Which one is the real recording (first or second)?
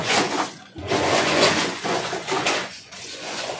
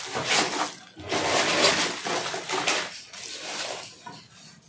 second